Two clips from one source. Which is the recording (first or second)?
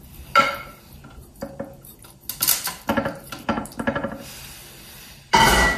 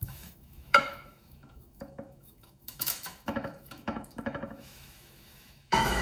first